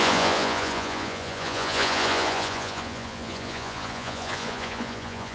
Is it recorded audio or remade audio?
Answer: remade